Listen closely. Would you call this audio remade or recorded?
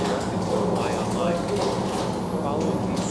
recorded